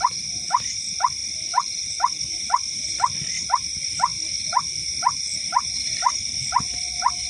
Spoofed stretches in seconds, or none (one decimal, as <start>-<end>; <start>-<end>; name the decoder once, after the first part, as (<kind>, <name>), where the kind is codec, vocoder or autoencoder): none